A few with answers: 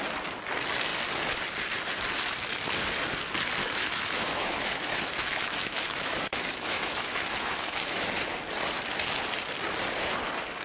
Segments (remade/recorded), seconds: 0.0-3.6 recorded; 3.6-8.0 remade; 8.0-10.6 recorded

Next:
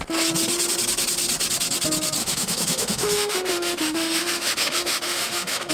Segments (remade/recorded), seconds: 0.0-2.2 recorded; 2.2-5.7 remade

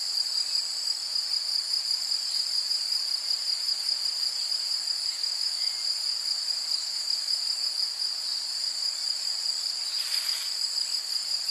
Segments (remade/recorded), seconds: 0.0-5.0 recorded; 5.0-5.7 remade; 5.7-6.9 recorded; 6.9-7.7 remade; 7.7-11.5 recorded

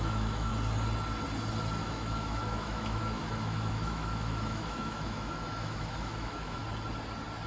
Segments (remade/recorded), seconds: 0.0-0.5 remade; 0.5-1.8 recorded; 1.8-6.6 remade; 6.6-7.5 recorded

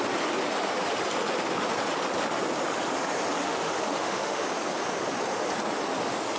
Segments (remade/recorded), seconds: 0.0-3.4 recorded; 3.4-4.4 remade; 4.4-6.4 recorded

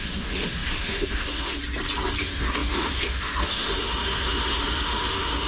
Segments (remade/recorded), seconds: 0.0-1.6 remade; 1.6-2.2 recorded; 2.2-5.5 remade

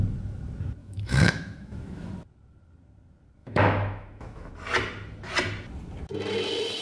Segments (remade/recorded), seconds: 0.0-0.8 recorded; 0.8-2.1 remade; 2.1-3.4 recorded; 3.4-4.5 remade; 4.5-6.8 recorded